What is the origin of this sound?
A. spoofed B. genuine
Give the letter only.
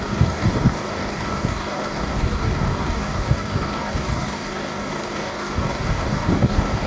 A